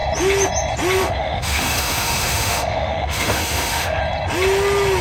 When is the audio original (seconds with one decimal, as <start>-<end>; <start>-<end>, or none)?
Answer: 0.0-1.0; 4.0-5.0

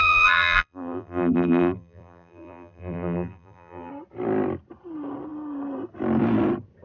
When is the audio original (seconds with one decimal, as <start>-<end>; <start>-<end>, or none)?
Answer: 3.9-6.8

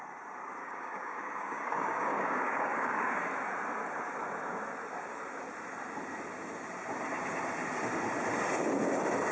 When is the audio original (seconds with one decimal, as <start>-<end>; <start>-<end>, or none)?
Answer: 0.0-0.6; 3.3-9.3

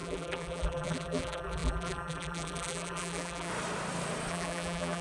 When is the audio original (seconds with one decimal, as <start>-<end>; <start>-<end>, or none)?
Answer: 3.5-4.3